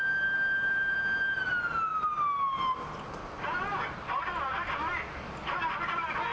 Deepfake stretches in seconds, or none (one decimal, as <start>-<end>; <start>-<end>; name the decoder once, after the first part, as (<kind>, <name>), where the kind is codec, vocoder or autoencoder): none